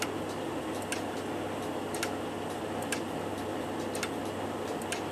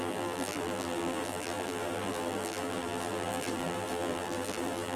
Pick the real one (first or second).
first